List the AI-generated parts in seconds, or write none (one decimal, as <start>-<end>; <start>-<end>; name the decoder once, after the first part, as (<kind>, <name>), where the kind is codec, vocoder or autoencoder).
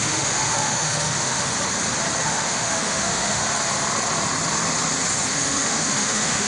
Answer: 0.0-1.5 (autoencoder, DAC-VAE); 2.2-3.4; 5.3-6.5